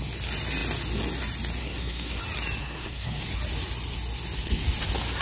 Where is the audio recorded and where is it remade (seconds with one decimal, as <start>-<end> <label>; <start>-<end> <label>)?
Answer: 0.0-1.6 recorded; 1.6-2.2 remade; 2.2-2.6 recorded; 2.6-3.2 remade; 3.2-5.2 recorded